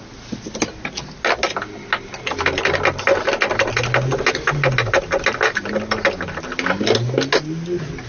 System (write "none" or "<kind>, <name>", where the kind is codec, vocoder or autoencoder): none